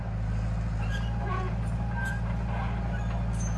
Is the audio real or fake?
real